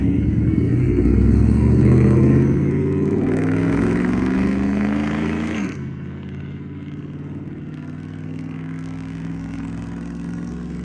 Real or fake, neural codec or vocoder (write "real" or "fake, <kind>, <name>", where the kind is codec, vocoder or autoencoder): fake, codec, SNAC